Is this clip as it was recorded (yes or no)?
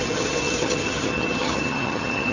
no